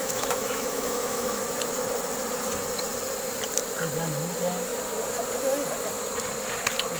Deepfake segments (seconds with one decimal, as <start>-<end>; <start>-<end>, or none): 0.0-1.4